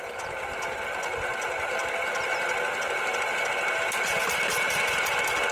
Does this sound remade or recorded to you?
recorded